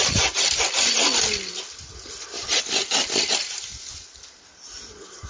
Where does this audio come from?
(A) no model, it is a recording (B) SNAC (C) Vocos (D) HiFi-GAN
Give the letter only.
A